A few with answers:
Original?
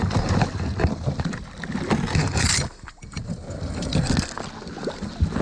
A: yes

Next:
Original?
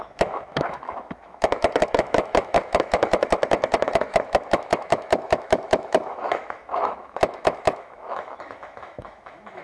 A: no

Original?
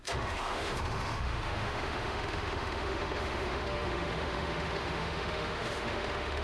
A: no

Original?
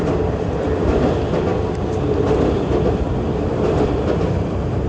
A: yes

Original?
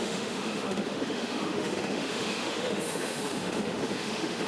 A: no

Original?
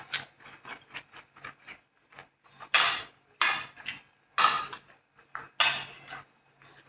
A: yes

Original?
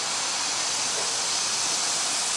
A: yes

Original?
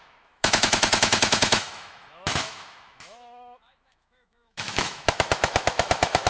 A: no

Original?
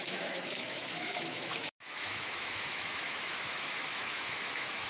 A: no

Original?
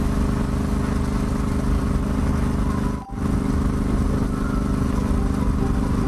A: yes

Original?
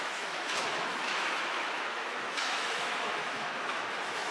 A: no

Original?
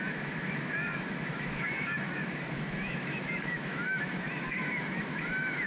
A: no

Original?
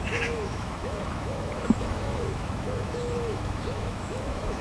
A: no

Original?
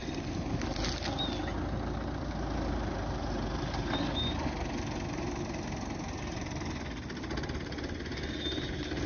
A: yes